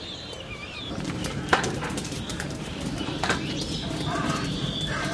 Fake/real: fake